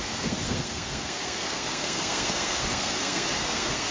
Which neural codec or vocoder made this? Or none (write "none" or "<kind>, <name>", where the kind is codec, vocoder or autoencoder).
codec, SNAC